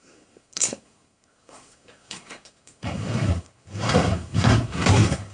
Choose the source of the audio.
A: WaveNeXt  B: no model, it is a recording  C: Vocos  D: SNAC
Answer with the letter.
D